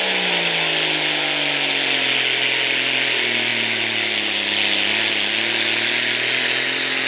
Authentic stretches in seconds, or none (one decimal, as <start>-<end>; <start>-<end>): 0.0-7.1